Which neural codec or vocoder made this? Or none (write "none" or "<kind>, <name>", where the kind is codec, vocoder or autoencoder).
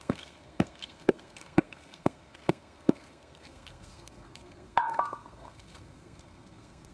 codec, SNAC